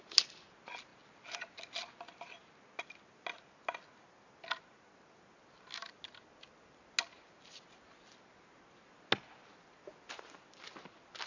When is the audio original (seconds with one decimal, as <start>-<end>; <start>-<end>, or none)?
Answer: 0.0-11.3